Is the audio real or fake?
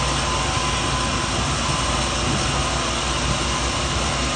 real